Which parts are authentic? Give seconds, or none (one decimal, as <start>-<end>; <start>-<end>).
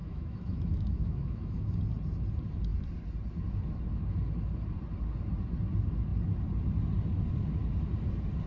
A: 1.8-8.5